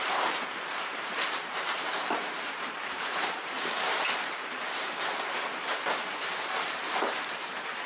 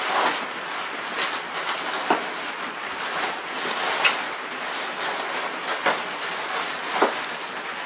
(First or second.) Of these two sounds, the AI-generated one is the first